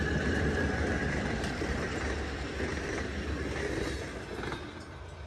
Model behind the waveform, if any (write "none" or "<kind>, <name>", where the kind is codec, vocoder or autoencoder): none